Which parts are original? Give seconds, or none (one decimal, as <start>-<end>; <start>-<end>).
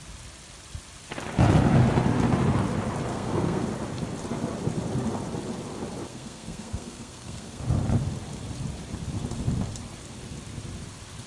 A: 0.0-3.1; 3.7-6.1; 7.6-11.3